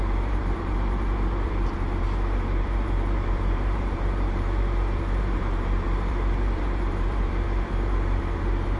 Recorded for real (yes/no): no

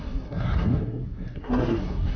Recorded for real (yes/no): no